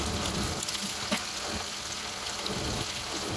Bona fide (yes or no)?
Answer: yes